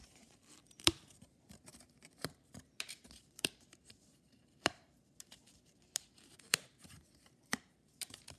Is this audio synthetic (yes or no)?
yes